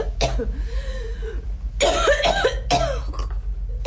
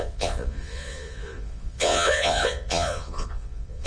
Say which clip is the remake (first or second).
second